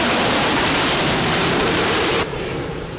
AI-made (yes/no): yes